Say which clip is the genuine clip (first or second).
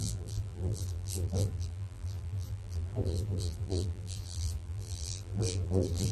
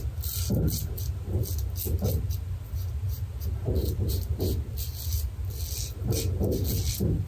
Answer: second